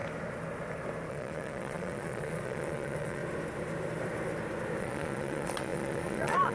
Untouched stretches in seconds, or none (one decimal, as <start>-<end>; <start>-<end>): 0.0-1.1; 3.2-4.8